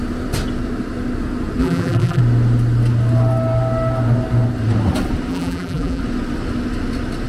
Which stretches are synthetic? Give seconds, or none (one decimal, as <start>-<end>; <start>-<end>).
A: 1.6-2.2; 5.3-6.0